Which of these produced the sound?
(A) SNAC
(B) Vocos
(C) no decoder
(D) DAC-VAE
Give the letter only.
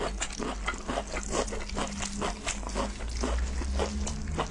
C